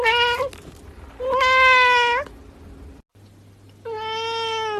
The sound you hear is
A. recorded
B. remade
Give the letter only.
A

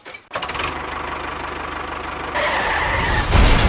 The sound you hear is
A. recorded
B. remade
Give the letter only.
A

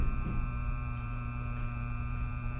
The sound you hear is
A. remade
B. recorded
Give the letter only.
A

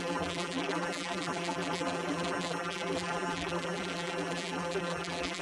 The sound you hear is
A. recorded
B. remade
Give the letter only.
B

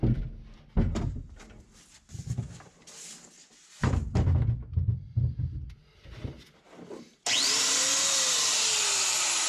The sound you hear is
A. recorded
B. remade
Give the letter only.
A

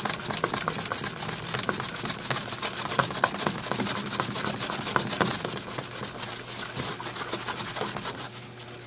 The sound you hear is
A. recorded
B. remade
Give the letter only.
A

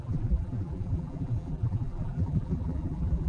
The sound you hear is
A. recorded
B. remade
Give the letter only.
B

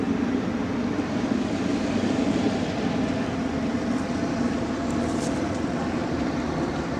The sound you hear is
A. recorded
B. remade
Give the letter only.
B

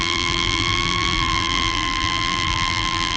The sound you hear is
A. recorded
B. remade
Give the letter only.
B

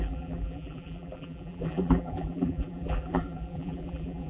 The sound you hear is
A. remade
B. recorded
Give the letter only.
A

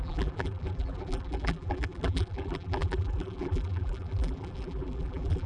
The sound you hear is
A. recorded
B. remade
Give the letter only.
B